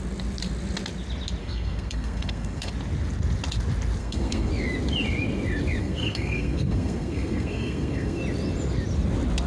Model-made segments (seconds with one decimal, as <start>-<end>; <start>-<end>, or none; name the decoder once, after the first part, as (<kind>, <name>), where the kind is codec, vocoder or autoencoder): 1.4-2.7 (codec, SNAC); 4.0-4.5; 5.8-8.2